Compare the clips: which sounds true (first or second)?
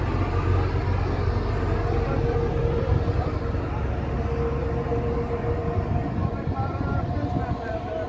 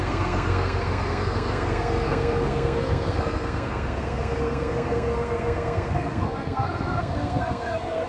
first